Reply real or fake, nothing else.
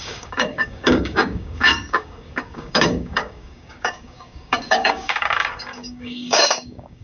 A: fake